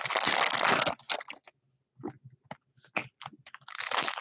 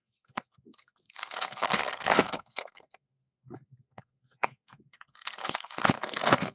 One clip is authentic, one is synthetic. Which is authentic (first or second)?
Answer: first